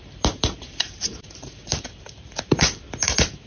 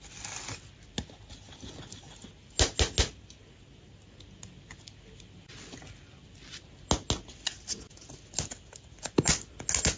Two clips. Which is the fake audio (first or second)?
first